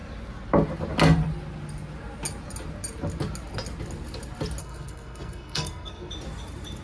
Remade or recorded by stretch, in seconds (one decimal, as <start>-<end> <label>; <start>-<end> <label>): 0.0-4.6 recorded; 4.6-6.1 remade; 6.1-6.8 recorded